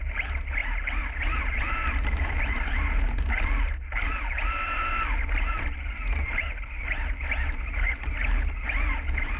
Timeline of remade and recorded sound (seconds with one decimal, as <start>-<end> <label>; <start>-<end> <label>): 0.0-9.4 recorded